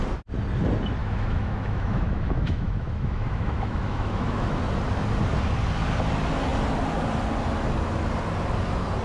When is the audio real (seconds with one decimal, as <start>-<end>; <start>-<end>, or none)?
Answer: 0.0-1.0; 4.6-9.0